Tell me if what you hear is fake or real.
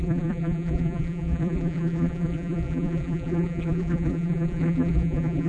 fake